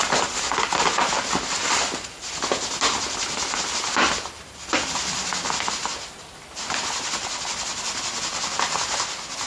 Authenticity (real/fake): real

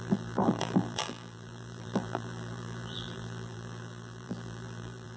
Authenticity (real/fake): fake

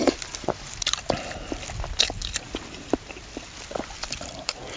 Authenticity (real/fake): fake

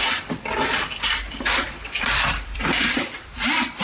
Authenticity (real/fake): fake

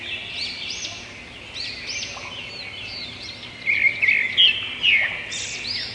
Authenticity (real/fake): real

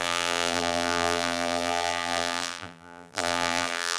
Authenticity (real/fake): fake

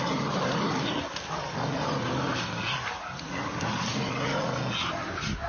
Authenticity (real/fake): real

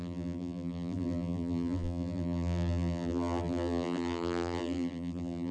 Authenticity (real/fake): fake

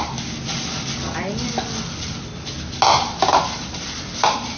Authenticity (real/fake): real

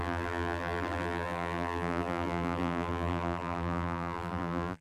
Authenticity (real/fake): fake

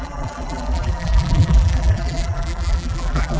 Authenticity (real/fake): fake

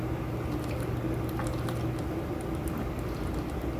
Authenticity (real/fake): real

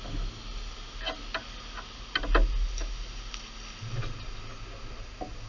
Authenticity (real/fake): real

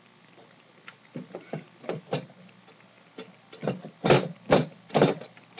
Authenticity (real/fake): real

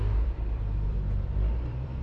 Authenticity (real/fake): fake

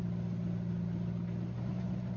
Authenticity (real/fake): real